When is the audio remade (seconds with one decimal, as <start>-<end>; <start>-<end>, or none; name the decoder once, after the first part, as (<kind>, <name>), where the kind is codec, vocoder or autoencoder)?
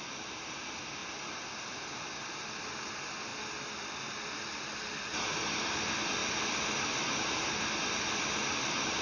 none